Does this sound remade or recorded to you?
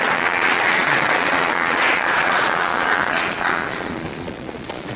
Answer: remade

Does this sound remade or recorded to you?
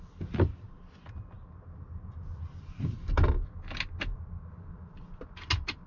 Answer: recorded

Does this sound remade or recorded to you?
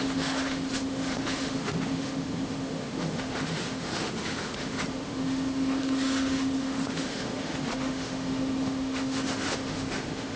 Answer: remade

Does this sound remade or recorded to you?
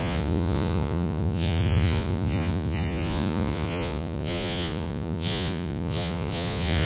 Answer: remade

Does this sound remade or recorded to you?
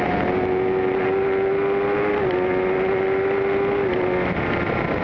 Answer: recorded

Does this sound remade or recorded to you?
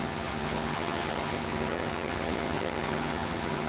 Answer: remade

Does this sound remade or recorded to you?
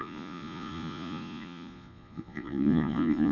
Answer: remade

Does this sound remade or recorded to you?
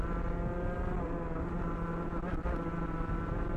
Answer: recorded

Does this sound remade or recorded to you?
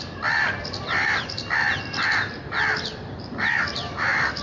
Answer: recorded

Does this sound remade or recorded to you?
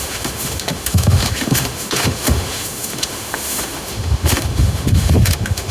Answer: remade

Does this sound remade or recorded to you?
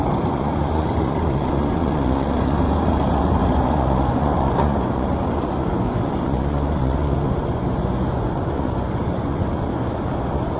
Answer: remade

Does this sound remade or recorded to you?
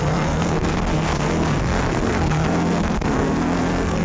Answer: remade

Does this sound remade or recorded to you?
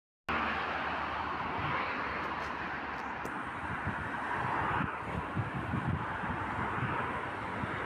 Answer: recorded